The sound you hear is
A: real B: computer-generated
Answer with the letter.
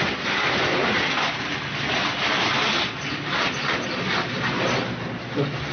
A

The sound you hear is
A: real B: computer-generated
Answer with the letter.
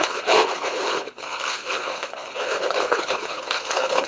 B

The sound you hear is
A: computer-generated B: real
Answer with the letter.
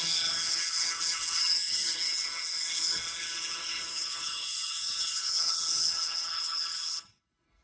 A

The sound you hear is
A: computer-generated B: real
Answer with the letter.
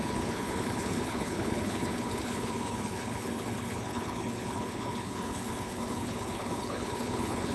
A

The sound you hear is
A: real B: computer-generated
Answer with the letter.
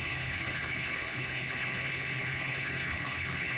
B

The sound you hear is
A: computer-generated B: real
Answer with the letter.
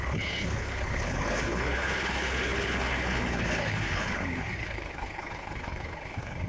A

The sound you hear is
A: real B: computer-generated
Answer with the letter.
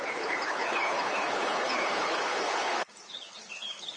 B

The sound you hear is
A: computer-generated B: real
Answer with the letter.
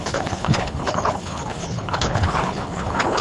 A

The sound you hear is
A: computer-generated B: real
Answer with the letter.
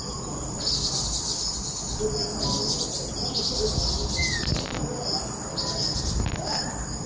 B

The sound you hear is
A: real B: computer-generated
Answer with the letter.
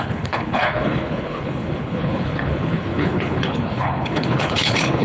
B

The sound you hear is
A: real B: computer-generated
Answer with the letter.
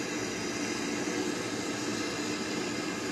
A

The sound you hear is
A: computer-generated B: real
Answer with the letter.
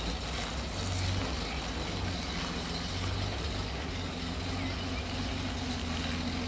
B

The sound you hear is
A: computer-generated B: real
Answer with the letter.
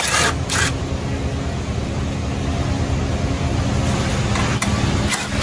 B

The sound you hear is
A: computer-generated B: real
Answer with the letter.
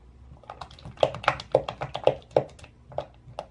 B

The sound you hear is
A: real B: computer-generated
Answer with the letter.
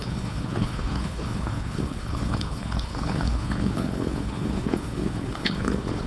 B